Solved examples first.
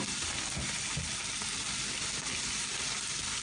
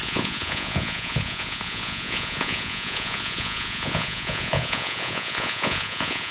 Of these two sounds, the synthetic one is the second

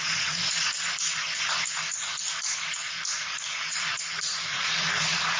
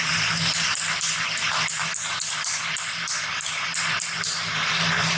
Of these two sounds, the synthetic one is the first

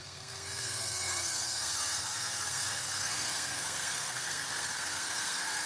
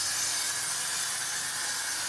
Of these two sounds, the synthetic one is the first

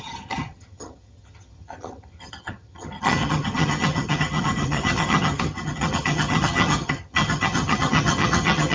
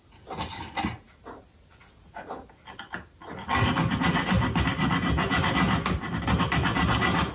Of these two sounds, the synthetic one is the first